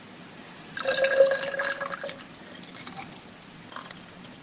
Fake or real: real